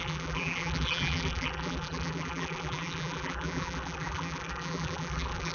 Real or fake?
fake